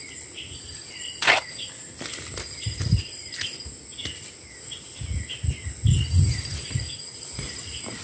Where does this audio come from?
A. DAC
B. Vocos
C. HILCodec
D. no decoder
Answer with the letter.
D